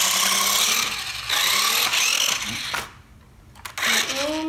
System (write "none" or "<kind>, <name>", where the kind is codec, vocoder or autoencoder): none